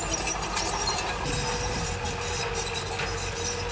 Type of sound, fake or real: real